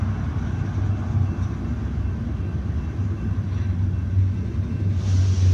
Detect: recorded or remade recorded